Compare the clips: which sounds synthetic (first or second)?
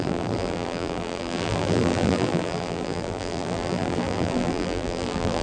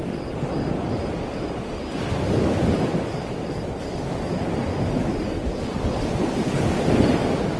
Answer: first